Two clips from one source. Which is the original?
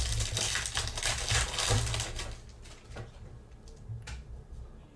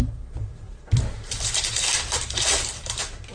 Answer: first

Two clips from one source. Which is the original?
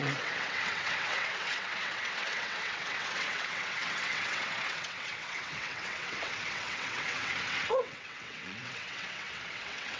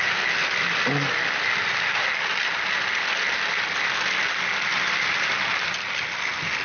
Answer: second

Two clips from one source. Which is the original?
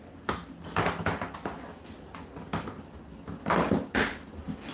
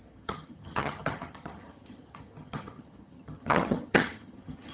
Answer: first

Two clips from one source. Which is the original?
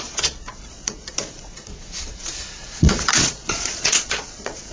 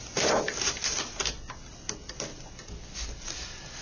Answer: second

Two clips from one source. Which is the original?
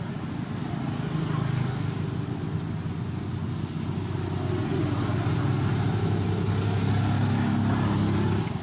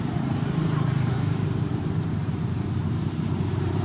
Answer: first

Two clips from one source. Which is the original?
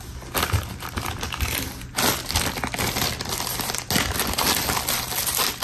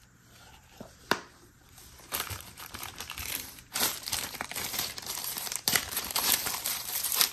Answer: first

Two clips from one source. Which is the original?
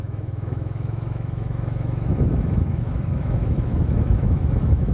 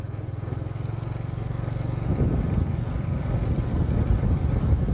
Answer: second